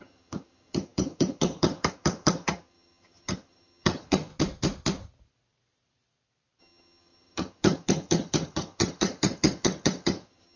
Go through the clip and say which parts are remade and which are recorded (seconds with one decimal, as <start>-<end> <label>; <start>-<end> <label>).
0.0-4.3 remade; 4.3-6.6 recorded; 6.6-10.6 remade